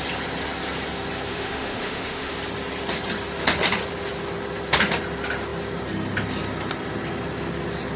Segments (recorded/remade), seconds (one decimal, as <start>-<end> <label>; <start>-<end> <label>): 0.0-1.3 recorded; 1.3-2.3 remade; 2.3-8.0 recorded